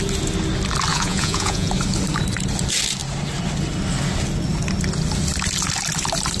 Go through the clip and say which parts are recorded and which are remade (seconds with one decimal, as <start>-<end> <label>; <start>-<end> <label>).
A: 0.0-0.9 recorded; 0.9-1.7 remade; 1.7-6.4 recorded